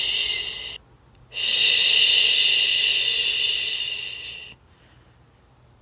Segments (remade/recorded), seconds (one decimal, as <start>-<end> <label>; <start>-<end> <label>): 0.0-5.8 recorded